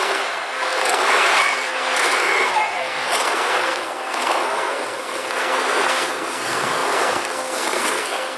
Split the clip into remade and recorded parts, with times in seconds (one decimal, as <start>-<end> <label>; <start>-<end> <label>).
0.0-8.4 remade

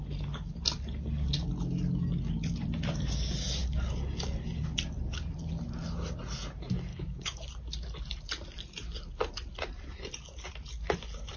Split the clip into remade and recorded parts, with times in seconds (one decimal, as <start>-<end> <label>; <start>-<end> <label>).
0.0-6.9 recorded; 6.9-7.5 remade; 7.5-11.4 recorded

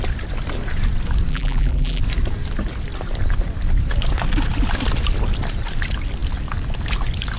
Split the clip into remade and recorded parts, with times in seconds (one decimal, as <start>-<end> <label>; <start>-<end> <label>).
0.0-1.3 recorded; 1.3-2.0 remade; 2.0-7.4 recorded

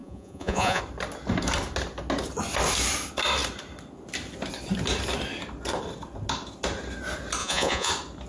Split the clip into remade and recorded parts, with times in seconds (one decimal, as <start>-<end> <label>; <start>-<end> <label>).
0.0-0.8 remade; 0.8-7.4 recorded; 7.4-7.9 remade; 7.9-8.3 recorded

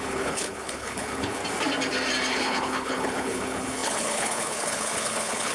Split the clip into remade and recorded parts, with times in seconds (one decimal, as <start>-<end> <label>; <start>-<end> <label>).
0.0-1.4 remade; 1.4-2.3 recorded; 2.3-5.5 remade

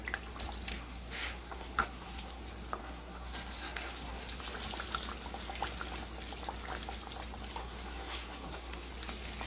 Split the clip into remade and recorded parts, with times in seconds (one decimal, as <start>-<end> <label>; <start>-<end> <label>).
0.0-0.7 recorded; 0.7-2.4 remade; 2.4-2.8 recorded; 2.8-4.4 remade; 4.4-7.6 recorded; 7.6-8.9 remade; 8.9-9.5 recorded

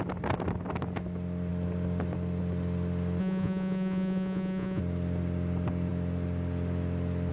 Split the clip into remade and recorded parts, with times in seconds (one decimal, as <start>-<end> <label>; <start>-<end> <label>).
0.0-3.2 recorded; 3.2-4.8 remade; 4.8-7.3 recorded